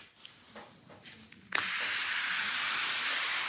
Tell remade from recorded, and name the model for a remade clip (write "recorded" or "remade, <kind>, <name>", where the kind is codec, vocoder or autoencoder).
recorded